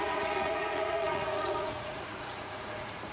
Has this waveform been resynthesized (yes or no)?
yes